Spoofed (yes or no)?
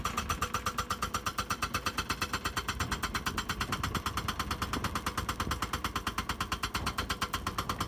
no